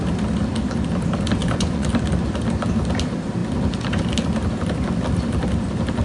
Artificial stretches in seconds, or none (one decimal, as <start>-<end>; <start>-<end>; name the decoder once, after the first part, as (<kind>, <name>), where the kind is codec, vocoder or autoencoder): 1.4-1.9 (vocoder, Vocos)